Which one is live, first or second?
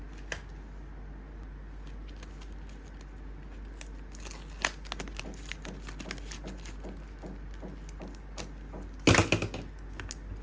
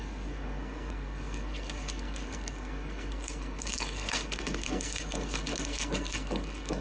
first